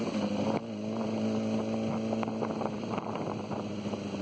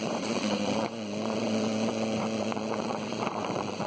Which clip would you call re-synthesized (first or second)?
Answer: second